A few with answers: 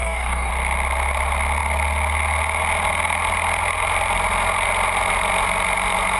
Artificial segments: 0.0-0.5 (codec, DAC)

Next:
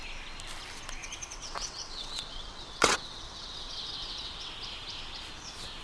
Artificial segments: 1.0-4.5 (vocoder, WaveNeXt)

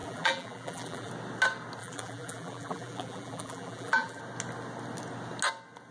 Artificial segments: 0.0-1.1 (vocoder, BigVGAN v2); 1.8-4.2

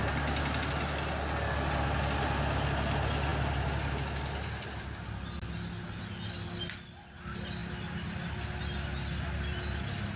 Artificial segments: none

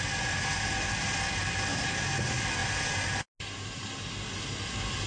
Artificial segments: none

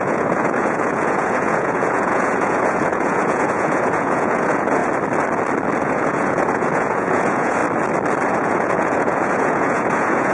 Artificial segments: 0.0-4.8 (vocoder, Vocos); 5.8-7.6; 8.3-10.3

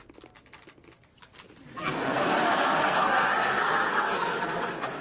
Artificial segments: 1.7-5.0 (codec, SNAC)